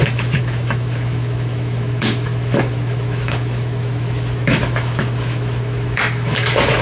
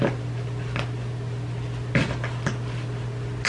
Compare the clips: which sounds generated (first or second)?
first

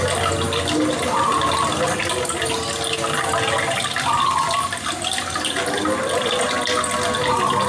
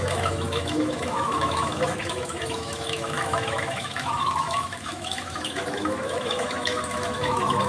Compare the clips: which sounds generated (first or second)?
second